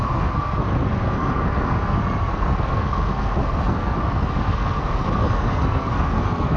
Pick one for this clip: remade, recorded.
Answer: remade